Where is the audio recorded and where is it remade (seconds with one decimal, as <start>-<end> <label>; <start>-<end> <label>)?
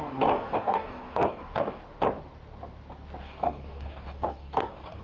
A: 0.0-1.8 remade; 1.8-3.2 recorded; 3.2-5.0 remade